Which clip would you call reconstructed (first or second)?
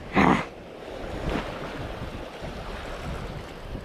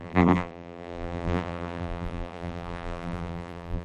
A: second